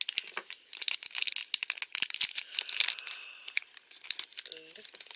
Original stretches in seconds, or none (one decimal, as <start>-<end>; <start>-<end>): 0.0-5.2